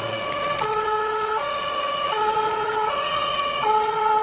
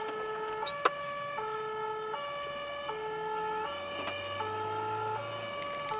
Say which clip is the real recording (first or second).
second